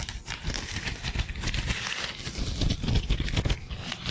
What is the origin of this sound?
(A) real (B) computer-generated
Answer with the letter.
A